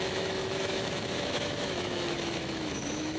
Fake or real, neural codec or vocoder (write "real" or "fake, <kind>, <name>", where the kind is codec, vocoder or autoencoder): fake, autoencoder, DAC-VAE